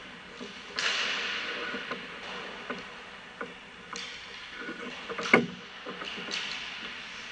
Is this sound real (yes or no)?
yes